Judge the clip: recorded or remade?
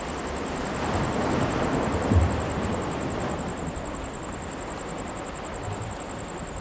recorded